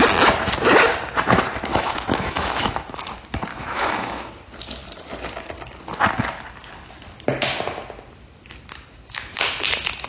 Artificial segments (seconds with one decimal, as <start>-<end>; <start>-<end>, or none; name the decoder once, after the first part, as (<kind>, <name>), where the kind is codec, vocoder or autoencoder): 1.7-3.0 (autoencoder, DAC-VAE); 3.5-4.3